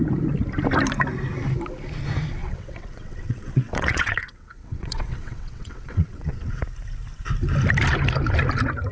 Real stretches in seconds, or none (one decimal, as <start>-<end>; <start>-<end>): 0.0-2.4; 6.6-8.9